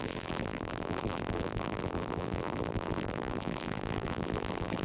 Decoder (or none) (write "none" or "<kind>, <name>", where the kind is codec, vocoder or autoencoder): vocoder, BigVGAN v2